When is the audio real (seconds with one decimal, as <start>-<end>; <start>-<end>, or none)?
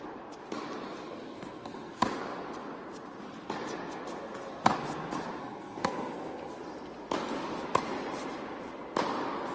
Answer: 0.0-1.0; 2.0-5.4; 6.6-9.5